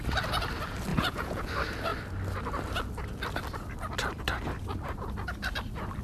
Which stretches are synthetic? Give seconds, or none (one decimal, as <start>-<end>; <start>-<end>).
0.9-1.5